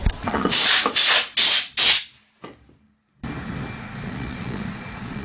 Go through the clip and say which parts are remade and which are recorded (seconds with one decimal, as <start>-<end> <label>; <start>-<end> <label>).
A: 0.0-0.7 remade; 0.7-3.8 recorded; 3.8-5.2 remade